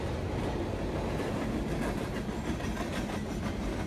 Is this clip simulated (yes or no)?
no